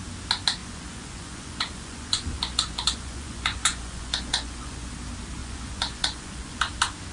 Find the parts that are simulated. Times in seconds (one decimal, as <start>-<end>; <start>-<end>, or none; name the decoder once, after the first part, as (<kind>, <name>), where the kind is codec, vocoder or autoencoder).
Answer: 0.6-4.9 (vocoder, Vocos); 5.4-6.6